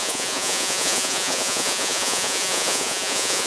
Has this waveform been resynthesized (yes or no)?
yes